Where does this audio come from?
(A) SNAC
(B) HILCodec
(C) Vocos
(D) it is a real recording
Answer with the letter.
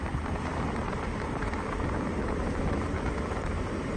D